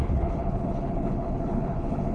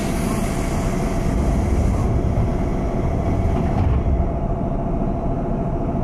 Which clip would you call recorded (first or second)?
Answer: second